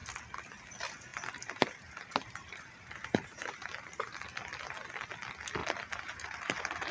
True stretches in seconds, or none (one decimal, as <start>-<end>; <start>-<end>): 0.0-1.1; 4.2-5.6